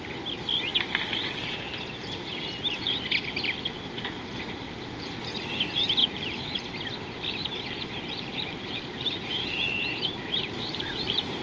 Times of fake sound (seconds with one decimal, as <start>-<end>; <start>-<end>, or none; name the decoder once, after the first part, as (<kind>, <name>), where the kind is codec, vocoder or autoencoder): 6.0-6.6 (vocoder, BigVGAN v2); 7.4-11.4